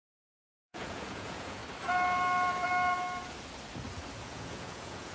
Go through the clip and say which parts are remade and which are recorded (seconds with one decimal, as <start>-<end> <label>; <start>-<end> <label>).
0.0-1.6 remade; 1.6-4.2 recorded; 4.2-5.1 remade